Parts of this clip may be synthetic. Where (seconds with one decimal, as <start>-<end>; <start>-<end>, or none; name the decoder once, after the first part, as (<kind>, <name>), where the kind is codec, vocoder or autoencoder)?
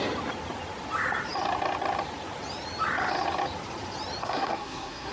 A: 4.2-5.1 (codec, SNAC)